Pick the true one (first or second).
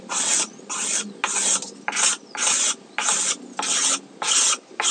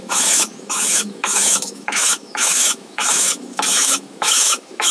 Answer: first